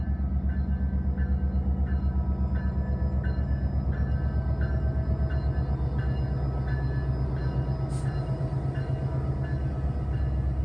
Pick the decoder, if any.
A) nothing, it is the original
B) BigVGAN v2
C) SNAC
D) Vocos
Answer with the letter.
A